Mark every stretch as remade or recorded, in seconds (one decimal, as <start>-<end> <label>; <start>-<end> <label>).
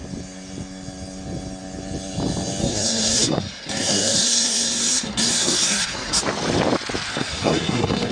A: 0.0-2.6 recorded; 2.6-6.2 remade; 6.2-7.1 recorded; 7.1-8.1 remade